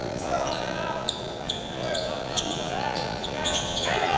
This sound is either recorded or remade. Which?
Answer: remade